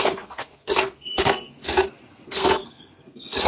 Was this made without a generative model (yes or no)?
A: no